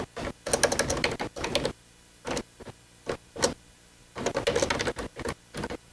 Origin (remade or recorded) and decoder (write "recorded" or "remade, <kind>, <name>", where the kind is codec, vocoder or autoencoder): recorded